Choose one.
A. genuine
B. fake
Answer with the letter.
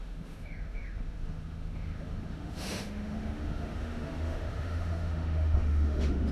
B